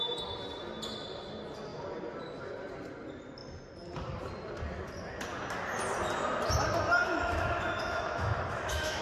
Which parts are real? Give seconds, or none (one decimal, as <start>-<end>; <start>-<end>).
0.0-7.0